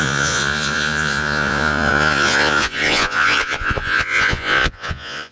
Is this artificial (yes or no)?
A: yes